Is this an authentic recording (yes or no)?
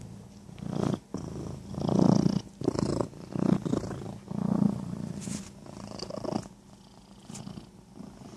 yes